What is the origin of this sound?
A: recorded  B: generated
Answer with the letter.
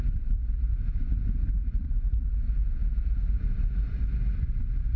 B